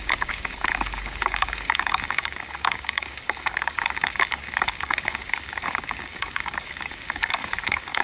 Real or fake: fake